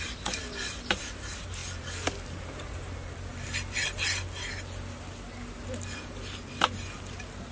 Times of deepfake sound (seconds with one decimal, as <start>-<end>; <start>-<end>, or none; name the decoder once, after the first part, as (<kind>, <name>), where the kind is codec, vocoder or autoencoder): none